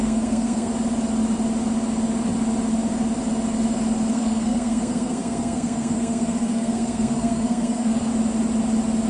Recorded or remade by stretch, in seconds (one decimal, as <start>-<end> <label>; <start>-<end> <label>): 0.0-0.7 remade; 0.7-4.1 recorded; 4.1-8.1 remade; 8.1-9.1 recorded